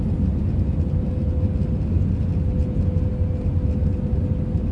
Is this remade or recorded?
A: recorded